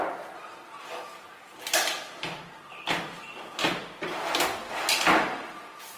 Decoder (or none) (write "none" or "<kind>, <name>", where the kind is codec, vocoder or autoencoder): none